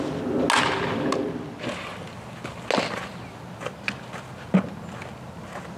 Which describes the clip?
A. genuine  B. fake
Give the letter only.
A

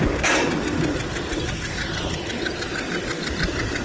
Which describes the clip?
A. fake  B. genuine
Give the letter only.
B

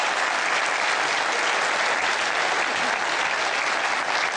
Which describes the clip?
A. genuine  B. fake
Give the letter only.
A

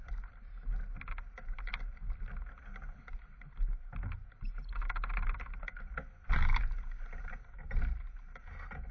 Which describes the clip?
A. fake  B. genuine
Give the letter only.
B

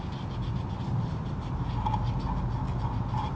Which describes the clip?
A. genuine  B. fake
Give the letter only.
A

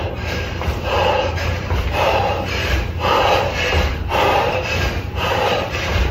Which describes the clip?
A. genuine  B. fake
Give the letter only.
B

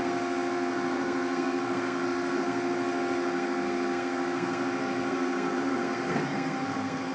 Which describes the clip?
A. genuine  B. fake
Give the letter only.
B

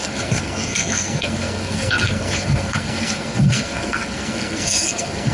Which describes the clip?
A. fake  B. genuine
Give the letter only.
A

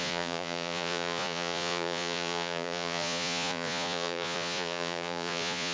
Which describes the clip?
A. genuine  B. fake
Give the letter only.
B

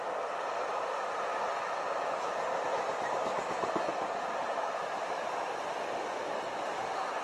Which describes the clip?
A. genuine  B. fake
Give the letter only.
A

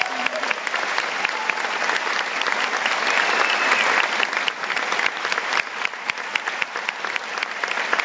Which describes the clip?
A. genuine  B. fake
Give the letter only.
A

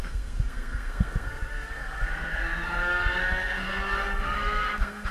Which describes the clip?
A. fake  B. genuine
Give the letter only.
A